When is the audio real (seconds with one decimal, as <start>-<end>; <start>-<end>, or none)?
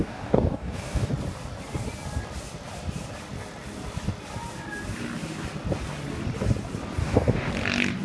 1.1-7.0; 7.5-8.0